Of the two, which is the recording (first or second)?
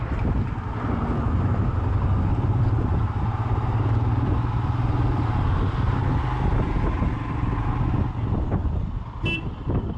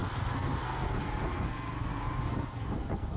first